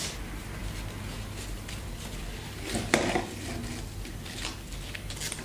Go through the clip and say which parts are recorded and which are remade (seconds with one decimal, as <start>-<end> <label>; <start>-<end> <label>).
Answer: 0.0-5.4 recorded